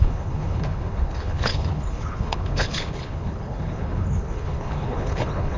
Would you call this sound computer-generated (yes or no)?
yes